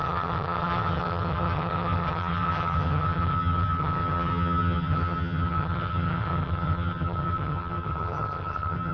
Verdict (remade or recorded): remade